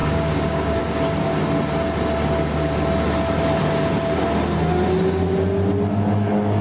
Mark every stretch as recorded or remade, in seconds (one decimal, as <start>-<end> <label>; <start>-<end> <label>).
0.0-0.8 remade; 0.8-6.6 recorded

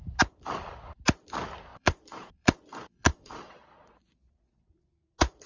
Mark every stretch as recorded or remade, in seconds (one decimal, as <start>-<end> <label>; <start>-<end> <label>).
0.0-1.7 recorded; 1.7-4.7 remade; 4.7-5.5 recorded

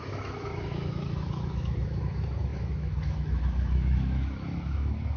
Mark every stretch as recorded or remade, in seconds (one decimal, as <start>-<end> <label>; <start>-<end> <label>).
0.0-5.2 remade

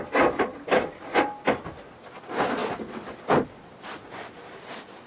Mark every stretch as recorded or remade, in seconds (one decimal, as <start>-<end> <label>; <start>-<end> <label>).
0.0-5.1 recorded

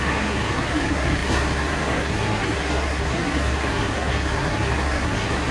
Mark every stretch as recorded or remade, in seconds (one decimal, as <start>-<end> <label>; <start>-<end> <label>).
0.0-5.5 remade

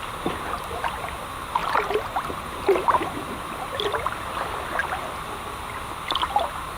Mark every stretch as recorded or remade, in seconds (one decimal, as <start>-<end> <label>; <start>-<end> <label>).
0.0-1.6 recorded; 1.6-2.5 remade; 2.5-6.8 recorded

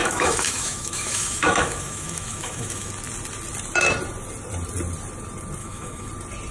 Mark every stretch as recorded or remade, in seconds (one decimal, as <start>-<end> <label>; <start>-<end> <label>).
0.0-2.9 remade; 2.9-5.6 recorded; 5.6-6.1 remade; 6.1-6.5 recorded

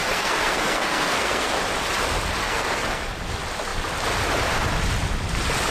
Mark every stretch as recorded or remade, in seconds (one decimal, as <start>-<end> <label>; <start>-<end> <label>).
0.0-1.5 remade; 1.5-2.4 recorded; 2.4-3.1 remade; 3.1-5.7 recorded